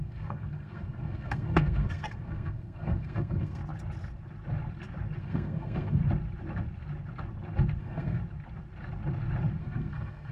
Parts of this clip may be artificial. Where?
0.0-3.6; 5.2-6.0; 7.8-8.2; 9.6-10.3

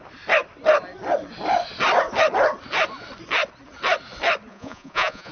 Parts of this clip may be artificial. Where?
4.5-5.3

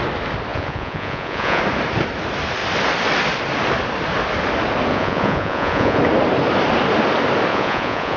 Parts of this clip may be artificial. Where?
0.5-1.6; 4.9-6.0; 7.5-8.2

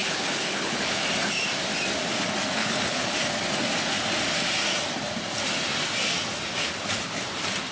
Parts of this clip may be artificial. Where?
0.0-1.0; 2.6-3.2; 6.6-7.2

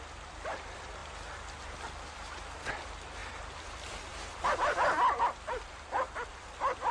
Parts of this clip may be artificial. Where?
0.0-1.0; 2.7-6.9

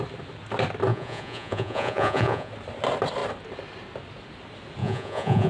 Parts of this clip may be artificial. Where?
0.9-2.5; 4.8-5.5

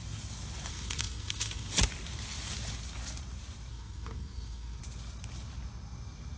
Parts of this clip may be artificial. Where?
0.7-1.7; 3.7-4.8

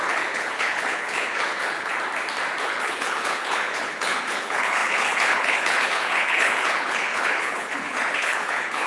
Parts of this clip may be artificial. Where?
0.0-1.9; 2.6-8.9